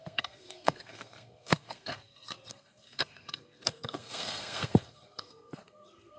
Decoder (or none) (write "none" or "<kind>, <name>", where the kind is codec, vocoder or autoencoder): codec, SNAC